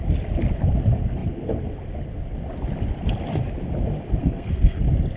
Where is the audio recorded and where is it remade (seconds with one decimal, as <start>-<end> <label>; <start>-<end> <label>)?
0.0-4.2 recorded; 4.2-4.8 remade; 4.8-5.2 recorded